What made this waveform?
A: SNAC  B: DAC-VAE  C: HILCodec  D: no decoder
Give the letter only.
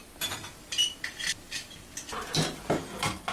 D